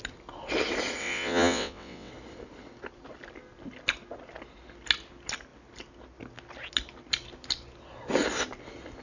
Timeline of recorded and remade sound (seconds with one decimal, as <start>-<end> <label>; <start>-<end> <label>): 0.0-1.0 recorded; 1.0-2.1 remade; 2.1-9.0 recorded